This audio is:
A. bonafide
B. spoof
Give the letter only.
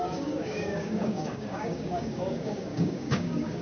B